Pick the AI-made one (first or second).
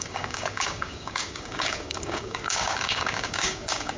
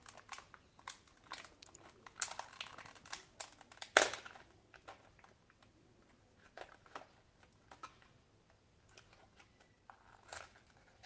first